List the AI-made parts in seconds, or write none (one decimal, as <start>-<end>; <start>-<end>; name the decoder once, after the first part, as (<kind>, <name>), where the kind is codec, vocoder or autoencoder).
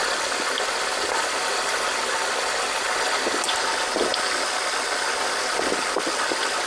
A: none